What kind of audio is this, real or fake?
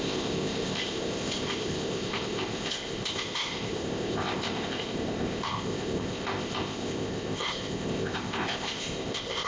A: fake